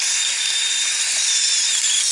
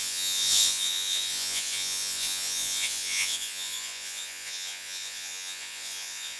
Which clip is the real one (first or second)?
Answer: first